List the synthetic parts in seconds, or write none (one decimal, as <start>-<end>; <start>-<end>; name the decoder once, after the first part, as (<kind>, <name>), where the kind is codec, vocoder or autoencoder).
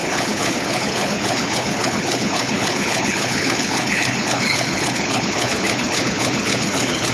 0.0-7.1 (codec, HILCodec)